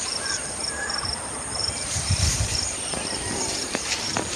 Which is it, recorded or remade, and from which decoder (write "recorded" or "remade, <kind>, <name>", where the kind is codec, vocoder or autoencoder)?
remade, vocoder, BigVGAN v2